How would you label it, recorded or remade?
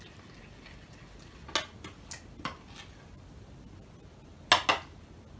recorded